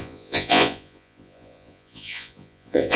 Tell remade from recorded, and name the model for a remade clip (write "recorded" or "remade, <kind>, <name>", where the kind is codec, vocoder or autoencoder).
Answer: remade, vocoder, Vocos